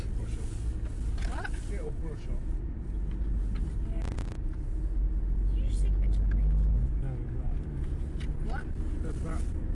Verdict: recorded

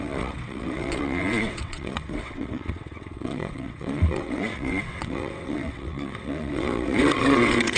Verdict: remade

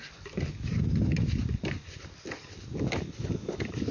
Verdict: recorded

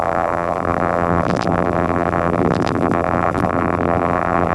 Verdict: remade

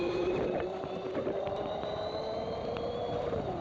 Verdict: remade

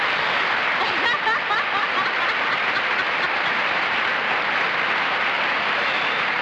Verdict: recorded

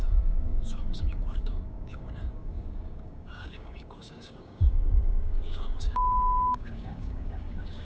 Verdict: remade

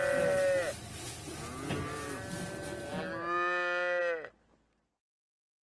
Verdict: recorded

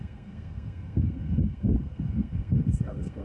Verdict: remade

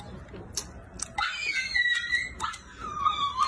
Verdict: recorded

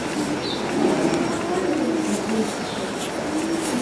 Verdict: recorded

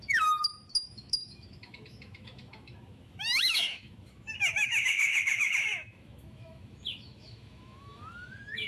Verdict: remade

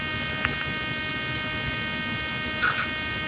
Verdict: recorded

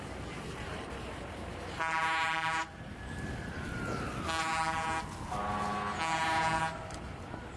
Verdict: recorded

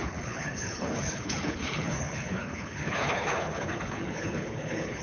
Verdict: remade